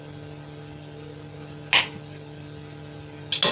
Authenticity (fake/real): real